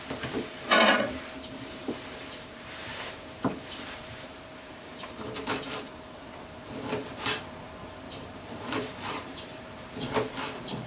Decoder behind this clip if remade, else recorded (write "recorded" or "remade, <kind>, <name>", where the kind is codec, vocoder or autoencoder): remade, vocoder, BigVGAN v2